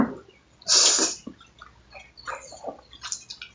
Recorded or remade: recorded